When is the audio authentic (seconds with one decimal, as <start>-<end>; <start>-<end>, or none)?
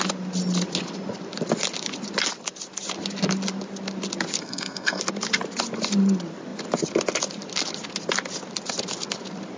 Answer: 0.0-4.4; 5.0-9.6